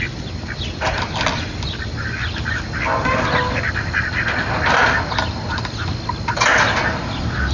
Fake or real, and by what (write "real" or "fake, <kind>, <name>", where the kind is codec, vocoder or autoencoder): real